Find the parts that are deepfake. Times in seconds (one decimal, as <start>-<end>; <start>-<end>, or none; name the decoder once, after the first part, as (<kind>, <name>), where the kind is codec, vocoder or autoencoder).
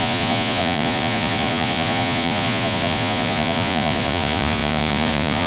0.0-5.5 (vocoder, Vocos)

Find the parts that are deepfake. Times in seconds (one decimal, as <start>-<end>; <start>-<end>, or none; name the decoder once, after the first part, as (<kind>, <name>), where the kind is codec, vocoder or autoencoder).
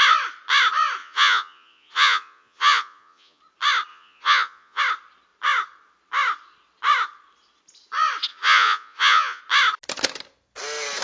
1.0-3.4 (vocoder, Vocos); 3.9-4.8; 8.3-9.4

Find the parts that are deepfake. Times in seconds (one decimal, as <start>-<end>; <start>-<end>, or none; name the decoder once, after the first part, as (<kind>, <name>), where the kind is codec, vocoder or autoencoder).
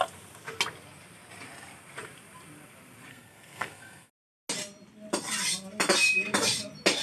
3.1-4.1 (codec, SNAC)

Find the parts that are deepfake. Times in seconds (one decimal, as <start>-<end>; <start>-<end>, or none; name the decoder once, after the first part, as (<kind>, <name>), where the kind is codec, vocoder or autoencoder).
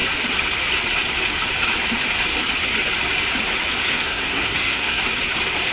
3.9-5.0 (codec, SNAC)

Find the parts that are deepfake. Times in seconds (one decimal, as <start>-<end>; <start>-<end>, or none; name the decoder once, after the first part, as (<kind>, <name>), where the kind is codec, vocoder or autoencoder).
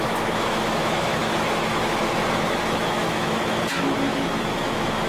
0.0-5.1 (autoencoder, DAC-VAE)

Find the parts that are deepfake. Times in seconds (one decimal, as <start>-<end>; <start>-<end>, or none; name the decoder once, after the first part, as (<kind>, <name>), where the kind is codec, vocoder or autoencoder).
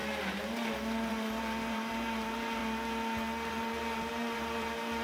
1.1-2.6 (vocoder, BigVGAN v2); 3.5-5.0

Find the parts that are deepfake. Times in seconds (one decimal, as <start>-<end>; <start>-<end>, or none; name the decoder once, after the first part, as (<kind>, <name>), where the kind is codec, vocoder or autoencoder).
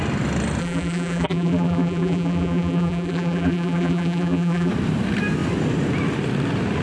0.6-4.7 (vocoder, BigVGAN v2)